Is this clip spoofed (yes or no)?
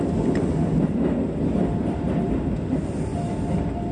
no